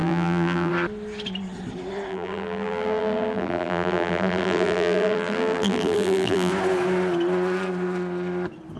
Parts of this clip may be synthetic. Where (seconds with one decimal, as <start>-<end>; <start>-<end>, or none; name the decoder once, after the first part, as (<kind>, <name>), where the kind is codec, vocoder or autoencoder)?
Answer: 0.0-0.7 (vocoder, BigVGAN v2); 2.1-6.5